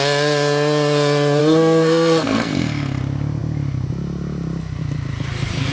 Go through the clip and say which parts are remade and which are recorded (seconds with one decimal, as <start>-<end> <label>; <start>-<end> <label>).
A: 0.0-1.4 recorded; 1.4-3.0 remade; 3.0-5.7 recorded